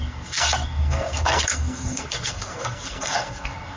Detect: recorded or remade remade